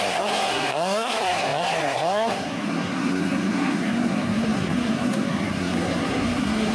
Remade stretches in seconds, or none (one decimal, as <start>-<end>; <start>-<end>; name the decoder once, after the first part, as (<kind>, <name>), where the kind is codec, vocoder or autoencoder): 0.0-6.7 (codec, SNAC)

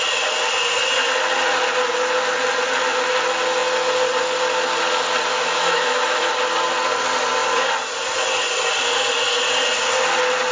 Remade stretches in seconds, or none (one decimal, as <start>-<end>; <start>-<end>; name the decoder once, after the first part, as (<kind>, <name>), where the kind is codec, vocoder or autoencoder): 5.3-6.3 (autoencoder, DAC-VAE)

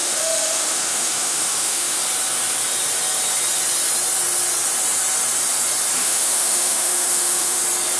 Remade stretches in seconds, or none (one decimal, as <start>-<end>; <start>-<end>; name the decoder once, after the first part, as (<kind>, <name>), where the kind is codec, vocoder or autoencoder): 0.0-2.0 (autoencoder, DAC-VAE); 6.0-7.6

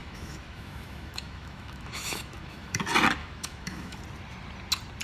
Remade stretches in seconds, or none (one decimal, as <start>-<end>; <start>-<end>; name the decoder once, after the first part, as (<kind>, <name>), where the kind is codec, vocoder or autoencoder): 0.0-2.8 (autoencoder, DAC-VAE); 3.2-4.0

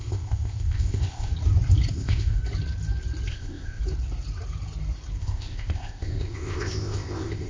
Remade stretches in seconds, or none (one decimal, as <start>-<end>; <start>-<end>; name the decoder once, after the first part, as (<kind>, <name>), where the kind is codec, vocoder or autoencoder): 0.0-1.3 (codec, ZipCodec); 1.9-2.4; 3.3-3.8; 5.2-7.5